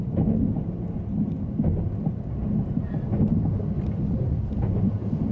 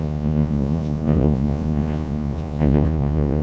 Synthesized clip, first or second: second